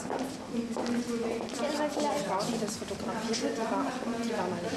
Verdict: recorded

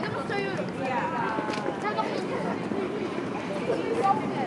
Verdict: recorded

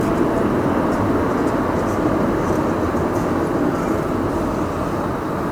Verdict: recorded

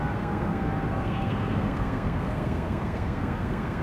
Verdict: remade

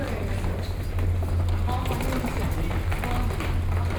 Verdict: recorded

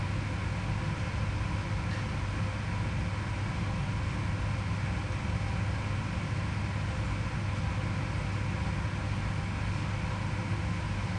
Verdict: recorded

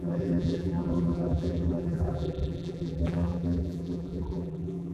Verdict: remade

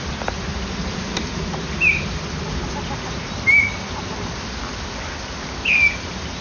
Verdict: recorded